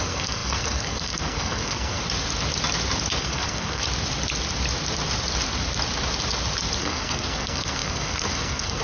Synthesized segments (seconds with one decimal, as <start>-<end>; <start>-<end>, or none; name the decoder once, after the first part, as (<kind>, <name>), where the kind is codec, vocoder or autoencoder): 0.0-2.0 (codec, SNAC); 3.2-3.8; 6.8-8.8